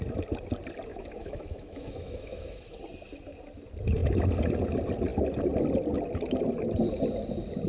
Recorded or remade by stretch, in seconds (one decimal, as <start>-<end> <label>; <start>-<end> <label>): 0.0-0.9 recorded; 0.9-2.8 remade; 2.8-7.7 recorded